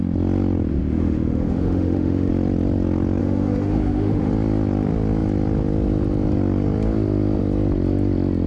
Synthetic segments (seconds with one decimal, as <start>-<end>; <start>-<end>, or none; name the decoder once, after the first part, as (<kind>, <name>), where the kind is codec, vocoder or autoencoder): 0.7-2.3 (autoencoder, DAC-VAE); 3.2-4.3